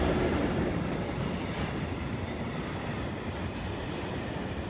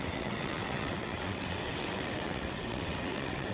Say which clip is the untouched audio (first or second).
first